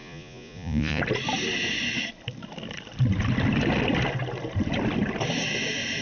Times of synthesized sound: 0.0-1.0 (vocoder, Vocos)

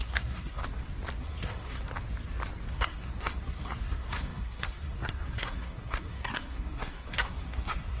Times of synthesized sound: 0.0-0.6 (codec, SNAC); 1.2-1.9; 2.7-8.0

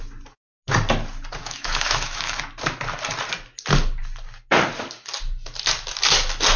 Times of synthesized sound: 1.4-2.4 (autoencoder, DAC-VAE)

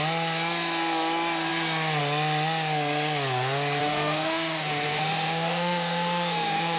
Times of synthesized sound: 3.8-6.8 (autoencoder, DAC-VAE)

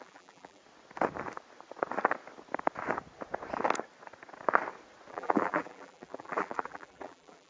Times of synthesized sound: 0.0-0.6 (vocoder, BigVGAN v2); 5.1-7.5

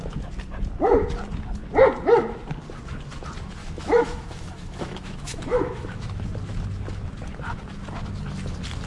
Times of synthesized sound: 3.6-6.0 (autoencoder, DAC-VAE)

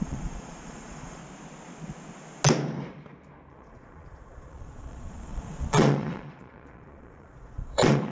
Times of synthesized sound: 0.0-1.2 (vocoder, Vocos); 3.5-8.1